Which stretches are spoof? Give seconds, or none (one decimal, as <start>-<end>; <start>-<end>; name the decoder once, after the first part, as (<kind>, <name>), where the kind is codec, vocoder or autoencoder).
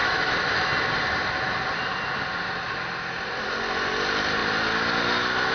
0.0-0.7 (autoencoder, DAC-VAE)